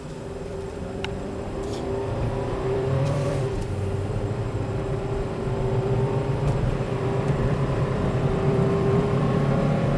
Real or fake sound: fake